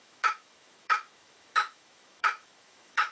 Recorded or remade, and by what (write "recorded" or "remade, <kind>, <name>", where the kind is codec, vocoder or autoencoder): remade, autoencoder, DAC-VAE